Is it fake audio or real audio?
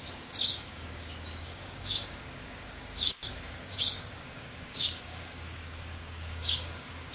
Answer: fake